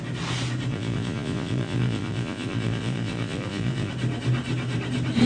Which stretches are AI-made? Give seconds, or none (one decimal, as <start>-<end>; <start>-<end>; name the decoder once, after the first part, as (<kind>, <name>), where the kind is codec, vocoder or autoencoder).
0.7-3.9 (vocoder, Vocos)